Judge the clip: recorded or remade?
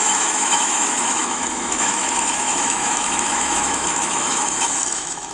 remade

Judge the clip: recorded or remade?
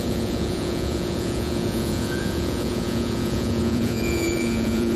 remade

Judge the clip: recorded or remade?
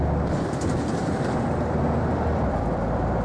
remade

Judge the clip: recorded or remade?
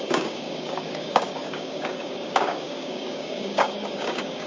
remade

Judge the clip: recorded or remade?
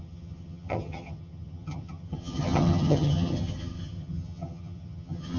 remade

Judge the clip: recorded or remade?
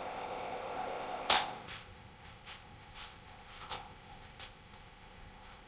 remade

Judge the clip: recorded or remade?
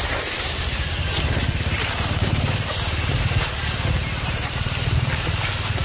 remade